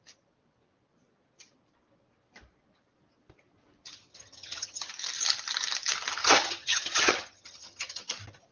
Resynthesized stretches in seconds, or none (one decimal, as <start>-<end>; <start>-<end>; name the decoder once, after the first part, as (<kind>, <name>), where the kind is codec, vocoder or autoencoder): 4.1-4.9 (vocoder, HiFi-GAN); 6.2-8.0